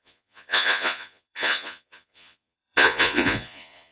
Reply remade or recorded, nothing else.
remade